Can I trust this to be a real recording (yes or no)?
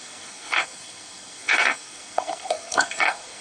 no